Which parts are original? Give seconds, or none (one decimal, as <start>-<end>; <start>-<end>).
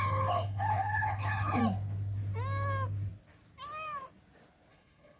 1.6-4.7